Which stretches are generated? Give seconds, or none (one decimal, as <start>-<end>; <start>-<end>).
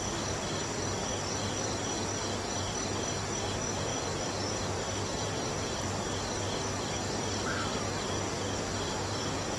3.9-6.1